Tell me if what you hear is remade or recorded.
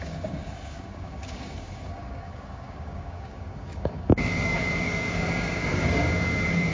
remade